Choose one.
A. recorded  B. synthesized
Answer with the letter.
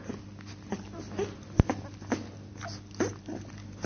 A